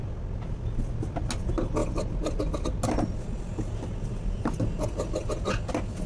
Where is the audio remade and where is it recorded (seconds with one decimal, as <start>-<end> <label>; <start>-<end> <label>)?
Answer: 0.0-6.1 recorded

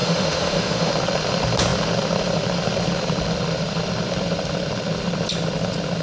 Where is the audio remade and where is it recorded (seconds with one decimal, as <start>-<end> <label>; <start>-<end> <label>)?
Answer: 0.0-0.9 remade; 0.9-6.0 recorded

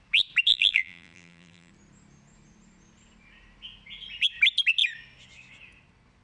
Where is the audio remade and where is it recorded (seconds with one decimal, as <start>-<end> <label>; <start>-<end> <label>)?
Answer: 0.0-0.5 recorded; 0.5-1.7 remade; 1.7-6.2 recorded

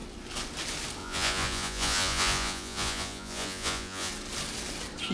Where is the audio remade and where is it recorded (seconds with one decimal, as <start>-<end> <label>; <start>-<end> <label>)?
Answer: 0.0-1.0 recorded; 1.0-4.1 remade; 4.1-5.1 recorded

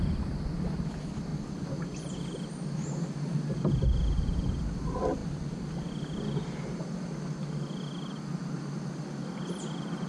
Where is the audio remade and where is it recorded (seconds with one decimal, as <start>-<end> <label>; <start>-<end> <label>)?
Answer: 0.0-1.3 remade; 1.3-4.6 recorded; 4.6-5.2 remade; 5.2-10.1 recorded